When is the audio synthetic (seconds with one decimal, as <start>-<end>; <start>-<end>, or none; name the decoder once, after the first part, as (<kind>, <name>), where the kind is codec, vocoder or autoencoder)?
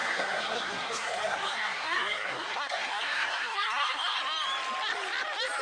0.0-4.2 (codec, SNAC)